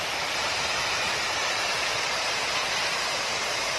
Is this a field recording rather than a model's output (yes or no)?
no